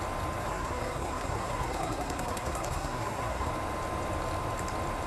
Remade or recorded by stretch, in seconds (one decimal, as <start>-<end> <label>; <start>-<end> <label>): 0.0-0.4 recorded; 0.4-3.5 remade; 3.5-5.1 recorded